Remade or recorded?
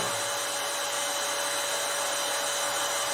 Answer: recorded